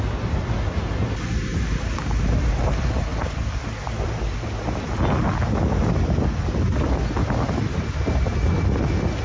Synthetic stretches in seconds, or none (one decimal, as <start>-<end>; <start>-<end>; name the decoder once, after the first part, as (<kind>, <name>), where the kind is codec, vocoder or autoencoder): none